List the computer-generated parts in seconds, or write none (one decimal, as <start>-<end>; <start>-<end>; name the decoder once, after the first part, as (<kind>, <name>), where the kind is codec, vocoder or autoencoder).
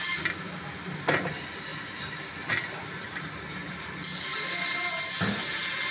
none